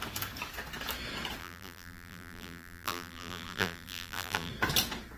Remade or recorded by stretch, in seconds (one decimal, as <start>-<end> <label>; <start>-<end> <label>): 0.0-1.4 recorded; 1.4-4.5 remade; 4.5-5.2 recorded

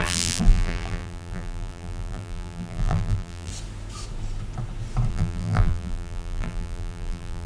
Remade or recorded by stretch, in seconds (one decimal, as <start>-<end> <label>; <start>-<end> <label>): 0.0-3.5 remade; 3.5-5.1 recorded; 5.1-7.5 remade

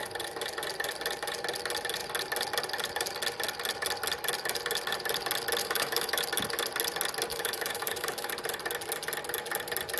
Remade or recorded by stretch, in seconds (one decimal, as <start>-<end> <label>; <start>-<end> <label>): 0.0-5.6 recorded; 5.6-6.2 remade; 6.2-7.3 recorded; 7.3-8.3 remade; 8.3-10.0 recorded

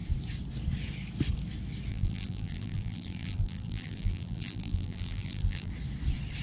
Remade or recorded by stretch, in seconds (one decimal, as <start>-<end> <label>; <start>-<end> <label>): 0.0-1.9 recorded; 1.9-5.7 remade; 5.7-6.4 recorded

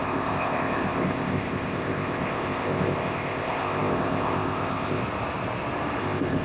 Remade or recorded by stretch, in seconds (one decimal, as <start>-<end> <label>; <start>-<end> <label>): 0.0-5.0 remade; 5.0-6.0 recorded; 6.0-6.4 remade